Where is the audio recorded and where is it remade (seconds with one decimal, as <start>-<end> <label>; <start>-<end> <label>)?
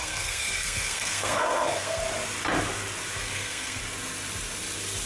0.0-2.0 remade; 2.0-3.1 recorded; 3.1-3.8 remade; 3.8-5.1 recorded